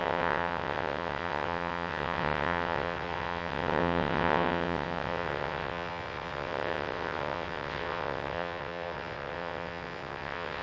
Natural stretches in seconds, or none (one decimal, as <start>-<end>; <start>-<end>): none